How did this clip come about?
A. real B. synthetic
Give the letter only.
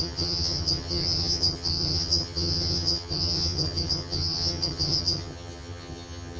B